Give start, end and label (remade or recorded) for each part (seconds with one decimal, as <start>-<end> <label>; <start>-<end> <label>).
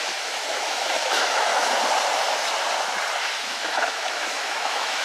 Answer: 0.0-1.5 remade; 1.5-3.2 recorded; 3.2-5.0 remade